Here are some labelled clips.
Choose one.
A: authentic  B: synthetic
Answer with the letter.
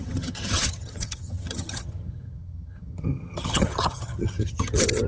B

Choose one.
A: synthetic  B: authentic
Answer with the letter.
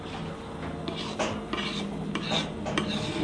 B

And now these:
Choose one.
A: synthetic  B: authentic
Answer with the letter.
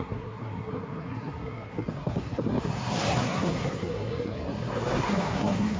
A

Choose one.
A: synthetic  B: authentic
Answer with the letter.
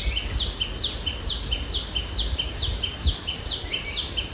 B